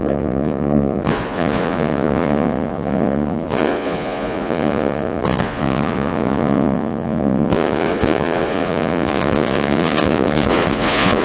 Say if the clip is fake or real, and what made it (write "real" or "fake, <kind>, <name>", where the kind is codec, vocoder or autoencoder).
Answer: fake, vocoder, Vocos